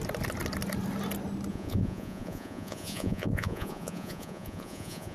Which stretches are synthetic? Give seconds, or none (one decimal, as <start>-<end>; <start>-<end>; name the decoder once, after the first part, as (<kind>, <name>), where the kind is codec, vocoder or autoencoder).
1.5-5.1 (vocoder, Vocos)